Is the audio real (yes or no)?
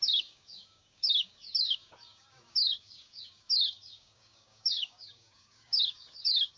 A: no